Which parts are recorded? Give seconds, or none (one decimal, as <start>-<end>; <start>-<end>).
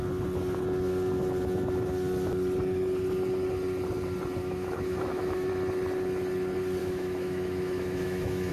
0.0-4.4; 5.5-6.8